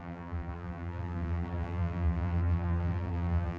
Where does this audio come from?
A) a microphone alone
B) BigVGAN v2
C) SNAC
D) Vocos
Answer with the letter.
B